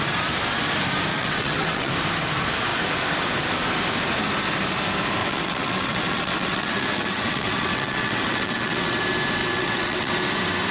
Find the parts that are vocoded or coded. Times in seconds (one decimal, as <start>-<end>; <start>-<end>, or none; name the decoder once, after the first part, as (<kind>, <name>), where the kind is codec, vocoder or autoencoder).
1.1-1.9 (vocoder, WaveNeXt); 5.2-9.0; 9.4-10.1